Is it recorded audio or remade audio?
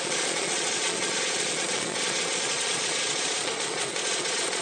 remade